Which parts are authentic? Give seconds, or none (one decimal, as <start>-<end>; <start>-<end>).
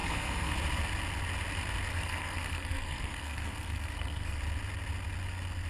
0.5-1.9; 4.4-5.7